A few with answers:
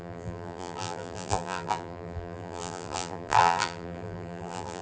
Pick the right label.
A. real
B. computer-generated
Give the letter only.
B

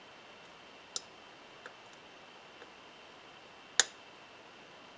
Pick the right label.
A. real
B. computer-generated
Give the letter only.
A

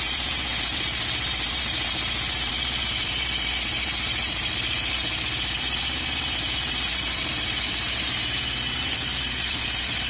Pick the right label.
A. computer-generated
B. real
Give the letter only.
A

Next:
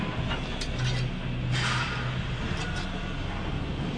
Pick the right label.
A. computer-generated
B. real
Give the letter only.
B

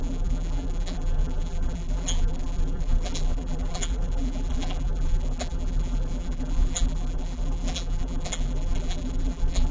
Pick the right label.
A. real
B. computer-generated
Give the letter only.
B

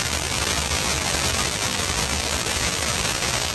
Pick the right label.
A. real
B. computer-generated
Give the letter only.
B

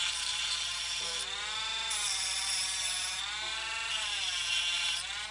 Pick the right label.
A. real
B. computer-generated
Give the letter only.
B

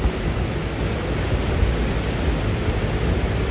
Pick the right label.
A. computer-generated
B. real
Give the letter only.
B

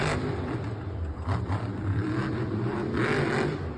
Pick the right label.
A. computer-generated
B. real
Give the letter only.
A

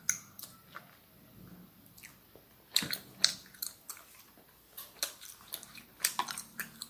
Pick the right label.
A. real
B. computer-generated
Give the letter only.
A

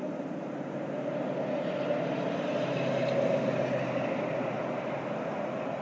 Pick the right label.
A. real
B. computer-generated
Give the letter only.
A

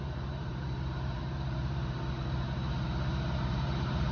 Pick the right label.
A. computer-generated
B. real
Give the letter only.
A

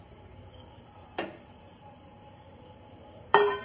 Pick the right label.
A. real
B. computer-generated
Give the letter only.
B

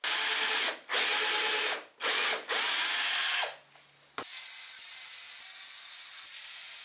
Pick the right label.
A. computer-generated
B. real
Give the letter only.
B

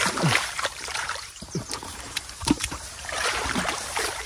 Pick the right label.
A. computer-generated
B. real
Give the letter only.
A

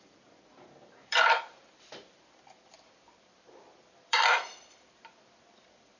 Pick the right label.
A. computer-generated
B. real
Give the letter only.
A